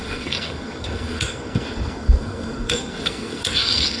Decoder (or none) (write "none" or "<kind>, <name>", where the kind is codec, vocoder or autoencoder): codec, SNAC